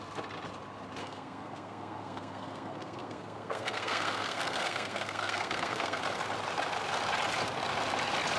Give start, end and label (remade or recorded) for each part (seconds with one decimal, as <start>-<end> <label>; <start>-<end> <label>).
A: 0.0-1.0 recorded; 1.0-6.0 remade; 6.0-8.4 recorded